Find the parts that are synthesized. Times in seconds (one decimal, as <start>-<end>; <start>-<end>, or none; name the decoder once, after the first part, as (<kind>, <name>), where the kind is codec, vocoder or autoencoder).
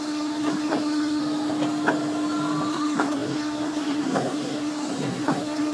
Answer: 0.0-1.2 (codec, SNAC); 2.7-5.7